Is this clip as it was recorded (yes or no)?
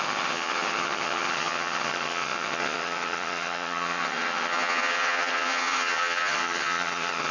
no